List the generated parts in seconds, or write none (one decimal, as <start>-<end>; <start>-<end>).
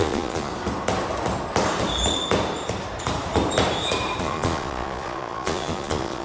0.0-0.5; 4.2-6.2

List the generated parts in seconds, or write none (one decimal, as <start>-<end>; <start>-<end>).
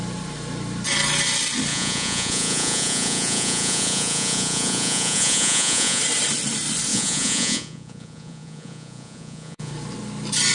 1.7-6.0; 6.9-9.7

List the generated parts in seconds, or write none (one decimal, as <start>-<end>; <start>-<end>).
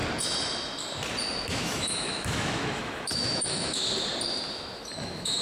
1.5-3.8; 4.5-5.4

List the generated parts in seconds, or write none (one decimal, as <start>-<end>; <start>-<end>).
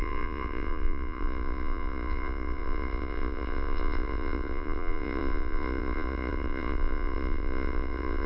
0.0-8.3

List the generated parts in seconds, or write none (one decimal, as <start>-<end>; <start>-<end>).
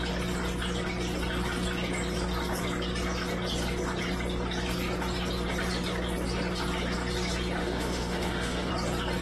7.6-8.7